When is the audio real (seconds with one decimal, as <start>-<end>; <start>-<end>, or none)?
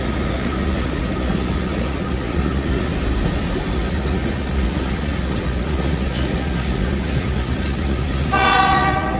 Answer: 2.9-3.7